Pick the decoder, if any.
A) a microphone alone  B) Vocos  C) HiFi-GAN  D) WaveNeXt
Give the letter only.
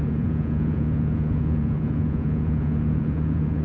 B